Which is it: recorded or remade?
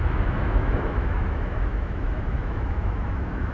remade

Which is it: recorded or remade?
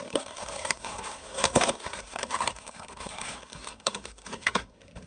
remade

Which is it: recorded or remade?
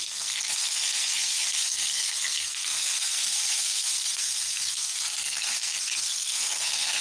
remade